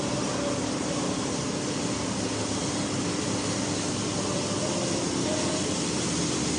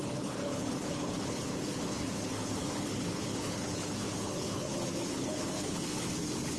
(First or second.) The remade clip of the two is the second